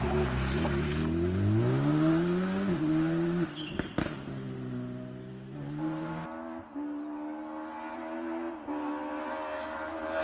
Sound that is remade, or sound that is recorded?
recorded